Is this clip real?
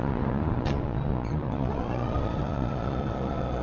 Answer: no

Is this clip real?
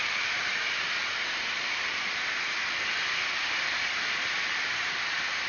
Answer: no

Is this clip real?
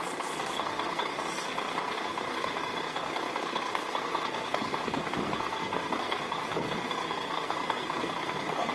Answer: no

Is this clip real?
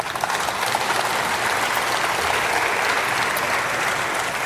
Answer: yes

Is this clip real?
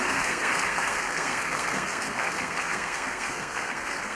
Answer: no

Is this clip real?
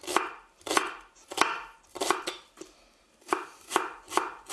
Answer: yes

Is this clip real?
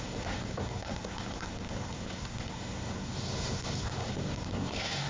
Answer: no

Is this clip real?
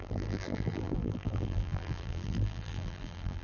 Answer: no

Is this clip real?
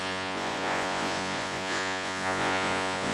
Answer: no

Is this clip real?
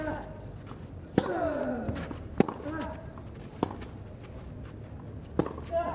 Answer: yes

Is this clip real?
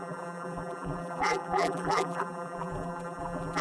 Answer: no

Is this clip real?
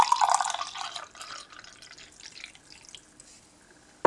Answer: yes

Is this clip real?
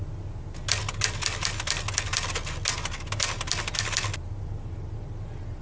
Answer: yes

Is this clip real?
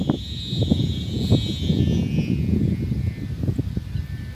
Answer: yes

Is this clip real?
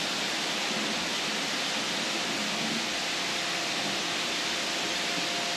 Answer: yes